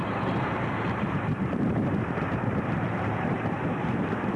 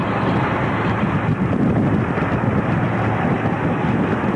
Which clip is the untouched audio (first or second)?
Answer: second